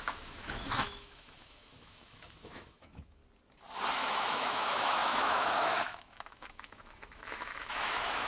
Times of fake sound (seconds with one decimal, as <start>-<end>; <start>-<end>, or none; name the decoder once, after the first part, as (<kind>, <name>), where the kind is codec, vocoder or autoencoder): 0.0-3.2 (autoencoder, DAC-VAE); 3.9-8.3